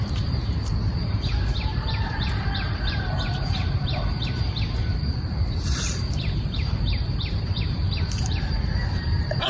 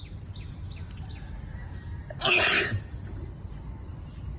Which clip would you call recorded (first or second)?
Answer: second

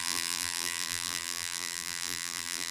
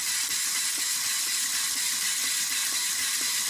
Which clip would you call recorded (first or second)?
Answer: second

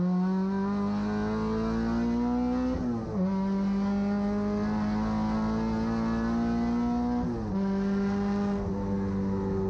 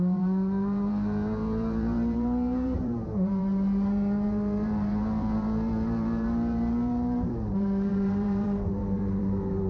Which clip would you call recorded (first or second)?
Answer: first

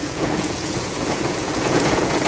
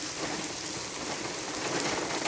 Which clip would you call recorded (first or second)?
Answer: second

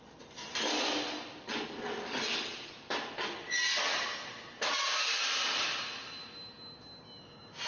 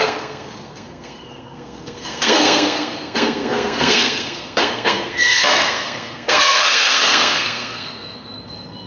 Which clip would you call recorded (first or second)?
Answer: first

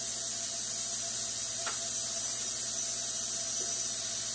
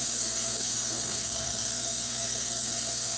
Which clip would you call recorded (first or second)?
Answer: first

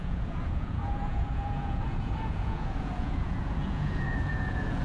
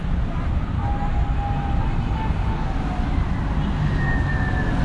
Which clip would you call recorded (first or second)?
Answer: second